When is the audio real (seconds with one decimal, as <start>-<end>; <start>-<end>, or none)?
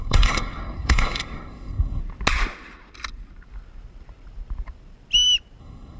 2.0-5.6